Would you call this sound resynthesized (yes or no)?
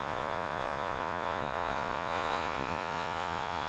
yes